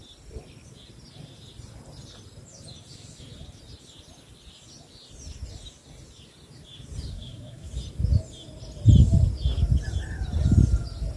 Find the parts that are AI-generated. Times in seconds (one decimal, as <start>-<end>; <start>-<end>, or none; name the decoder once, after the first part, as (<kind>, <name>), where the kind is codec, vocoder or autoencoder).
7.1-7.7 (codec, SNAC)